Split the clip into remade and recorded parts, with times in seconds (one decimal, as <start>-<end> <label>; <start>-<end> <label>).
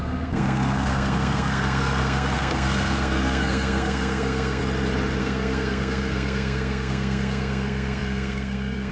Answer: 0.0-4.6 remade; 4.6-5.2 recorded; 5.2-8.9 remade